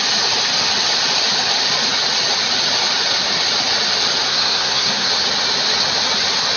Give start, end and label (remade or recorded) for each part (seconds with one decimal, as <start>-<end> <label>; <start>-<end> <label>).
0.0-4.3 recorded; 4.3-5.1 remade; 5.1-6.6 recorded